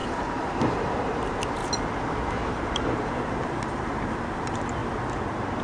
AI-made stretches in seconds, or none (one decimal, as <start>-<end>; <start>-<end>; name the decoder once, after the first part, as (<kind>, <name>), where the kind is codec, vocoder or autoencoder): 0.0-1.6 (vocoder, BigVGAN v2); 2.3-4.8